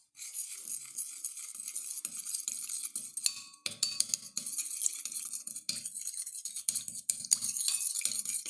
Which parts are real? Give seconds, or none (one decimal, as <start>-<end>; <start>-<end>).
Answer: 0.0-8.5